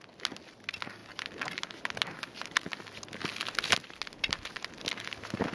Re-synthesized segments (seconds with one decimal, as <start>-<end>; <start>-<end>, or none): none